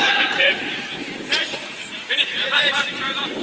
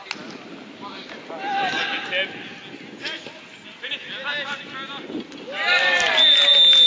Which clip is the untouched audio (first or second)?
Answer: second